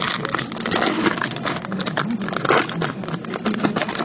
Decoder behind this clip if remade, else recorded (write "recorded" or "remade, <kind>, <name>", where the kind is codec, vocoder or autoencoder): recorded